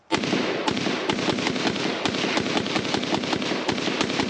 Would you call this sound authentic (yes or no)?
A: yes